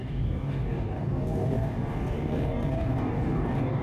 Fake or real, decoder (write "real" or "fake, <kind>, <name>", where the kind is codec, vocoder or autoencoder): fake, codec, DAC